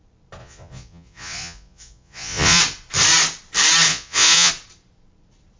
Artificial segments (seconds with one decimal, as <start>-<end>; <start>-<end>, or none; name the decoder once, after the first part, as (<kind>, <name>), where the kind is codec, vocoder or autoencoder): 0.4-2.6 (vocoder, Vocos); 3.9-4.5